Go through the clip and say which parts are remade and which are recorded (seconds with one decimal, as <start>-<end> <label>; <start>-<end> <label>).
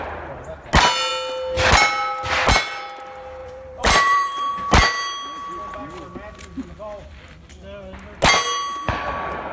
0.0-3.4 recorded; 3.4-4.5 remade; 4.5-9.5 recorded